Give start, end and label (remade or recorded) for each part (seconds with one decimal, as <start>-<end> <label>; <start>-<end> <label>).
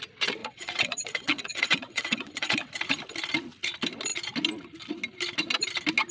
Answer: 0.0-0.4 recorded; 0.4-2.7 remade; 2.7-6.1 recorded